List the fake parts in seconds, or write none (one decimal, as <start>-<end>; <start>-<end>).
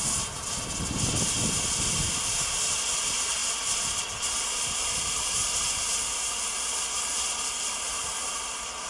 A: none